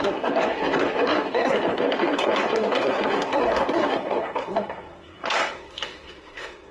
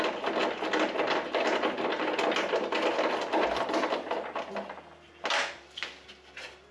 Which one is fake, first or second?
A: first